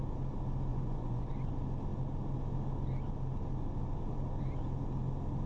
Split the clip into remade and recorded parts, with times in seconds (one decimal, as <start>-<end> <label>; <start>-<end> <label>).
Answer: 0.0-0.7 recorded; 0.7-1.3 remade; 1.3-5.5 recorded